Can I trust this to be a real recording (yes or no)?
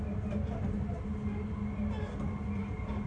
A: yes